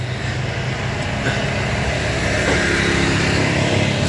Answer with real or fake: real